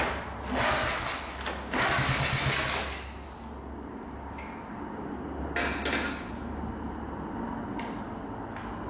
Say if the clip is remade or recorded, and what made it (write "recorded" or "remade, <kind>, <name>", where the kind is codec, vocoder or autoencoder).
recorded